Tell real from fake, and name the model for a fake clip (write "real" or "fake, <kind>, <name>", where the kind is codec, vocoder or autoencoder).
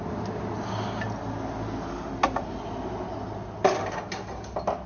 real